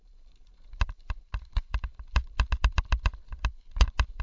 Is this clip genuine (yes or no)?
no